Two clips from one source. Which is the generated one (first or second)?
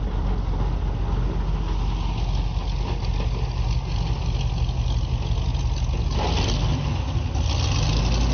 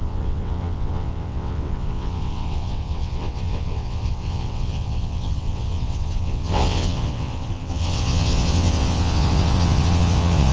second